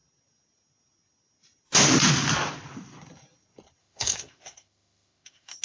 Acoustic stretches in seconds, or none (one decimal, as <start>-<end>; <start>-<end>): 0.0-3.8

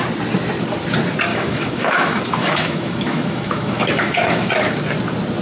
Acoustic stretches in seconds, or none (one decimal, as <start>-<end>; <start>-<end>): 0.0-1.3; 4.5-5.4

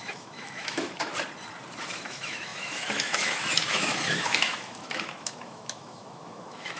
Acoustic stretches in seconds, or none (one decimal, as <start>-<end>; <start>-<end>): 1.1-1.8

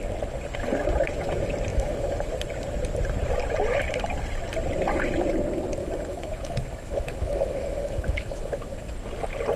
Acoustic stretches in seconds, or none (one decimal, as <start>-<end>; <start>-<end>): 0.0-1.7; 2.3-5.8; 8.9-9.6

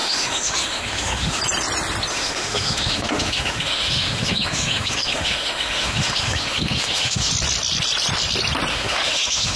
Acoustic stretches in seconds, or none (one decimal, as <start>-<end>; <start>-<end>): 1.4-2.1; 7.3-8.7